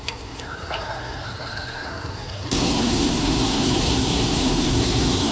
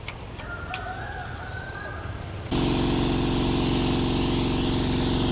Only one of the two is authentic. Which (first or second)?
second